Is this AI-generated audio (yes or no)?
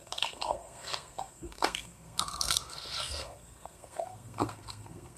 yes